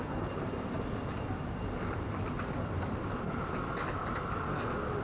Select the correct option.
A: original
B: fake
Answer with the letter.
A